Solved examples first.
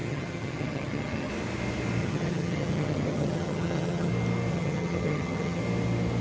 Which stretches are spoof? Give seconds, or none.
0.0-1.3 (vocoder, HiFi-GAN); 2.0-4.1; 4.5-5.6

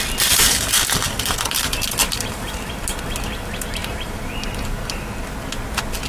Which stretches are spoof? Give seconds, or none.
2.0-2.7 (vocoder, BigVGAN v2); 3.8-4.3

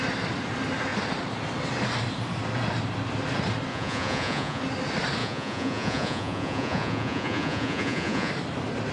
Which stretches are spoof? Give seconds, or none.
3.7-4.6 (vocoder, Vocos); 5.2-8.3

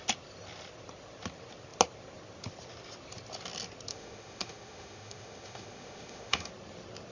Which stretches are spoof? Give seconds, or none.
3.9-6.5 (autoencoder, DAC-VAE)

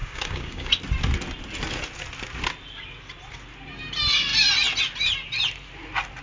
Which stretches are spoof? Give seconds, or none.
0.0-0.7 (codec, DAC)